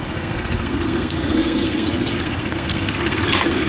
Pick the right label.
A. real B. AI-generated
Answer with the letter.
B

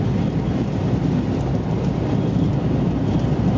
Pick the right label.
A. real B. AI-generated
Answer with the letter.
A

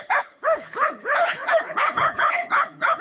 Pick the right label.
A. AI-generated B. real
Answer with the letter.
A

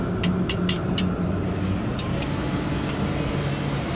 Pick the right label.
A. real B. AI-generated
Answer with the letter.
A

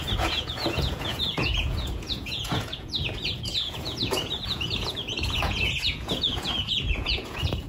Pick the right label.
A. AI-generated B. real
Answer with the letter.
A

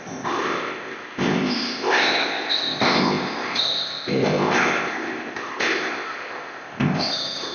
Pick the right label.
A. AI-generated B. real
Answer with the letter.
A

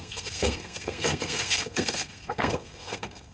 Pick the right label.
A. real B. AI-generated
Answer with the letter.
B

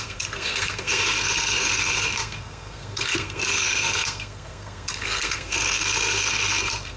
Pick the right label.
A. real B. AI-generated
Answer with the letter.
B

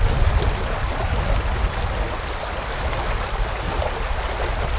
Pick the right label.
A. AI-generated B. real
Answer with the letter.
B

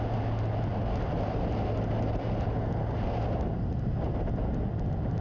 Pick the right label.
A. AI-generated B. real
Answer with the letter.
B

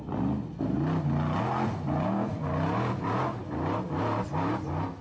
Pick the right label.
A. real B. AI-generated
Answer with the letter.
A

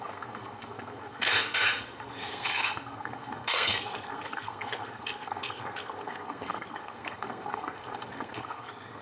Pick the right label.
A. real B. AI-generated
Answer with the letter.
B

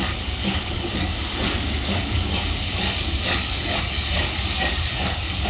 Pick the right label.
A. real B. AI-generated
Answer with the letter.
B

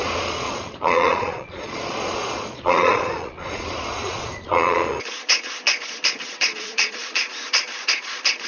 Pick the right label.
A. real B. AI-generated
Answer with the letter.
B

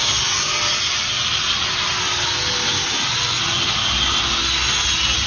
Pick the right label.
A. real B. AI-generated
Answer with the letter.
A